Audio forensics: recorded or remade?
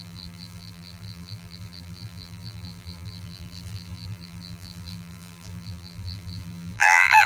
remade